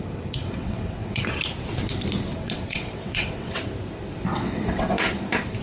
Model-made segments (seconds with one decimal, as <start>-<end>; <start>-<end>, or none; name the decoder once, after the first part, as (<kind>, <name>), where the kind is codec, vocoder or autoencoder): 0.4-1.2 (vocoder, WaveNeXt); 2.3-3.6; 4.3-5.0